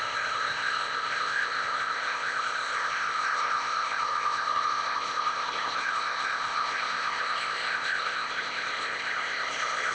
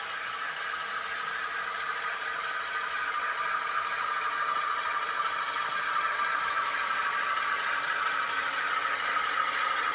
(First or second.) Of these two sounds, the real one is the second